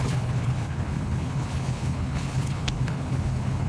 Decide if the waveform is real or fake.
fake